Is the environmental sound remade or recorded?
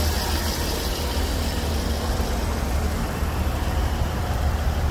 recorded